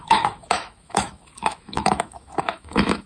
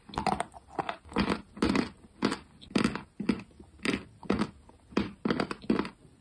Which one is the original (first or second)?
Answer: second